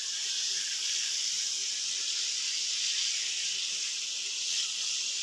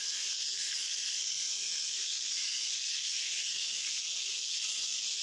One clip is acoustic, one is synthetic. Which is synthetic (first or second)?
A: second